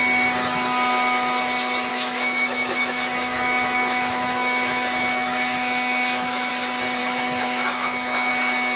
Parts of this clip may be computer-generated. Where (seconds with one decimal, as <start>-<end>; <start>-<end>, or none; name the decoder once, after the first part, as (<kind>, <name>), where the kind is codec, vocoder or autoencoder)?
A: 1.9-6.5 (autoencoder, DAC-VAE); 7.0-8.3

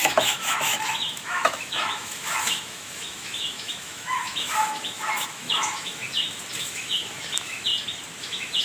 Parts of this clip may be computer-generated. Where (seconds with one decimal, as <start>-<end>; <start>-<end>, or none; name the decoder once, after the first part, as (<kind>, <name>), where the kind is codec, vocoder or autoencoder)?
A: 0.0-6.0 (autoencoder, DAC-VAE); 6.6-7.7; 8.2-8.6

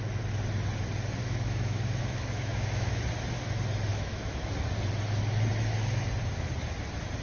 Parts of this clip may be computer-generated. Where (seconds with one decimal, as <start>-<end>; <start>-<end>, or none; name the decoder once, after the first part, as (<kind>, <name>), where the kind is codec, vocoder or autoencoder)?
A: 1.2-3.0 (autoencoder, DAC-VAE); 3.9-4.5

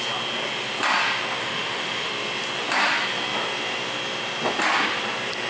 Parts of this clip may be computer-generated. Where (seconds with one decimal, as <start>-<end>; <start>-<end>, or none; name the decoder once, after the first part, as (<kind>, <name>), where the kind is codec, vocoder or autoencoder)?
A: 1.4-2.1 (autoencoder, DAC-VAE)

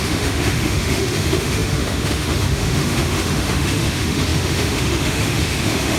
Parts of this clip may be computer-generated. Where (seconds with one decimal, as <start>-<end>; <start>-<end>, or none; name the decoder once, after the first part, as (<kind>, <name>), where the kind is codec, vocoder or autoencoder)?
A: 0.0-6.0 (autoencoder, DAC-VAE)

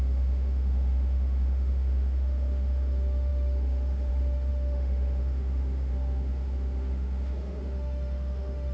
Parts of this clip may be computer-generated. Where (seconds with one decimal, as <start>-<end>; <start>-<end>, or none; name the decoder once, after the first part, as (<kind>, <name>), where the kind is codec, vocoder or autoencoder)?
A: 0.0-8.7 (autoencoder, DAC-VAE)